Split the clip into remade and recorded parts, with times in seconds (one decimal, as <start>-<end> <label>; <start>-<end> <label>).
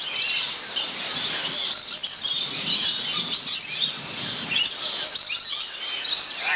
0.0-6.6 recorded